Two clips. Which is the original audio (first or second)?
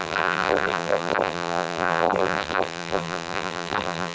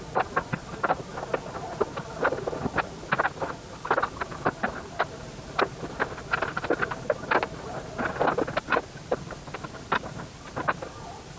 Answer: second